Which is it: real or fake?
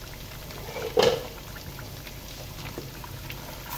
real